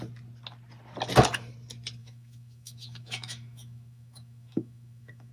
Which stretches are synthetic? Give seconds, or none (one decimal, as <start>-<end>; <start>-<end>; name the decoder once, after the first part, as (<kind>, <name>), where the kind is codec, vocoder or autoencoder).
2.0-5.3 (autoencoder, DAC-VAE)